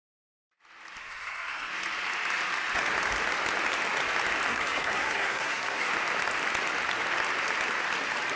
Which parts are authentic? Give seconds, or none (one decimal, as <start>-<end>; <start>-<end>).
0.0-1.0; 1.7-4.5; 5.9-8.4